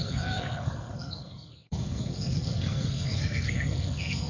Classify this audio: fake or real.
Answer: fake